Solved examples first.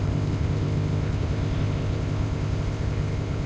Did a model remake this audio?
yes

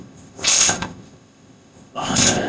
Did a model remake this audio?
yes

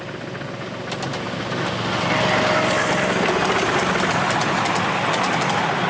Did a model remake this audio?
no